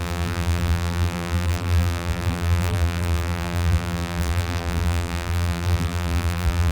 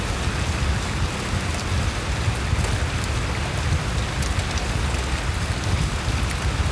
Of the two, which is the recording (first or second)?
second